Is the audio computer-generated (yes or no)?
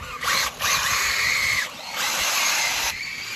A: yes